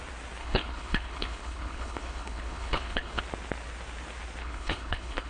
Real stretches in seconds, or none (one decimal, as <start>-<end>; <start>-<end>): 0.0-0.4; 3.2-4.4